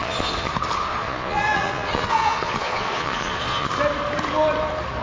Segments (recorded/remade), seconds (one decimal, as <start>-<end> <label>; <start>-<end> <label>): 0.0-0.5 remade; 0.5-0.9 recorded; 0.9-3.7 remade; 3.7-5.0 recorded